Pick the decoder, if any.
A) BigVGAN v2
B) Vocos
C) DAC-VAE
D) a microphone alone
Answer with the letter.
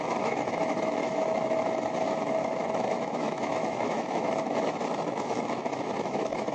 C